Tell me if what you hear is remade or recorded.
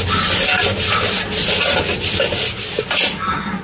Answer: recorded